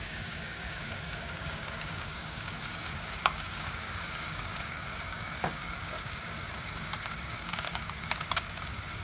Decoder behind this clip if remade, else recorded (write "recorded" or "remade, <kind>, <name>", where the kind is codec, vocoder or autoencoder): remade, codec, DAC